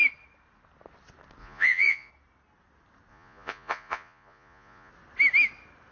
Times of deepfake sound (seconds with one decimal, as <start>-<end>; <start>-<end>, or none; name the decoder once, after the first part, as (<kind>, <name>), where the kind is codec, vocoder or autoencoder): 1.4-2.1 (vocoder, Vocos); 3.1-4.9